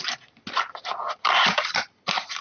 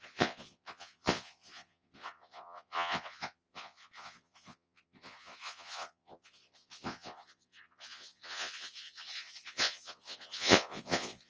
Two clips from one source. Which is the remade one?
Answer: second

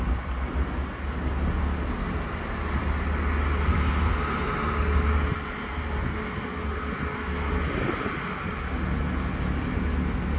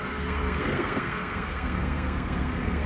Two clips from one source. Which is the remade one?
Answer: second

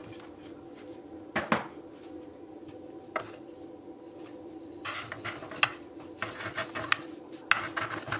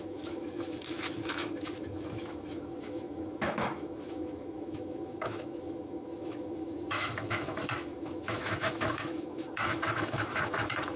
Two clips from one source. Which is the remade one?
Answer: second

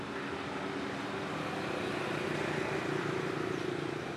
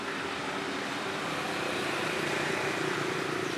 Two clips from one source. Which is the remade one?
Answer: second